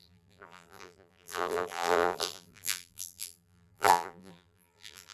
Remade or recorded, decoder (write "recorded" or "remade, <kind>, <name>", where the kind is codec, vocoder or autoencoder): remade, vocoder, BigVGAN v2